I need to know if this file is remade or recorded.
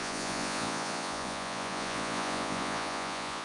remade